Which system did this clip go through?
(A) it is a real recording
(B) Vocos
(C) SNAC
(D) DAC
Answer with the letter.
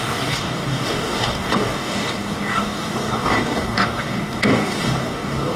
D